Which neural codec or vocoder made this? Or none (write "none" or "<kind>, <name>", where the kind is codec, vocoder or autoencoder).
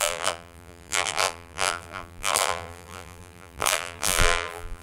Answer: vocoder, BigVGAN v2